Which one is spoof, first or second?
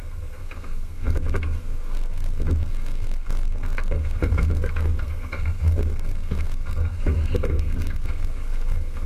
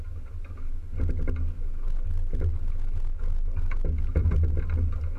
first